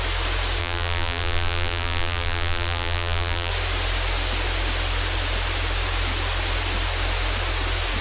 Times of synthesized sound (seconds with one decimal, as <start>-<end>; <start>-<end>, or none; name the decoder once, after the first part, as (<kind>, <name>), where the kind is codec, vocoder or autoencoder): 0.6-3.5 (vocoder, BigVGAN v2)